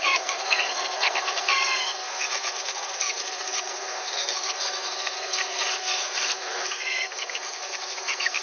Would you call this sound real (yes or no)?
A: no